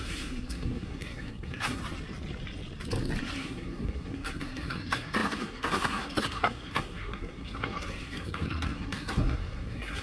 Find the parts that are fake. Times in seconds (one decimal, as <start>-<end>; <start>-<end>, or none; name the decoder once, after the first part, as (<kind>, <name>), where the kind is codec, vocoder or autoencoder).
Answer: 0.0-1.8 (codec, SNAC); 3.2-10.0